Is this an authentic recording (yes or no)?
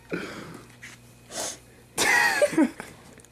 yes